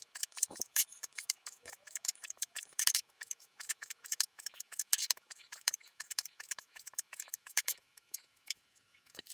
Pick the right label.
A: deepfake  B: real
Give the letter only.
A